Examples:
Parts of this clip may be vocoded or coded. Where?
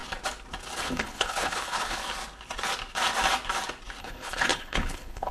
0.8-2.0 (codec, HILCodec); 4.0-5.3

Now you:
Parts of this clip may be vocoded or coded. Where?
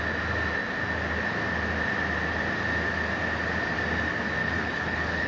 4.4-5.3 (codec, HILCodec)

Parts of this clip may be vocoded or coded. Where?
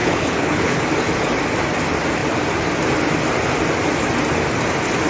0.0-0.8 (codec, HILCodec)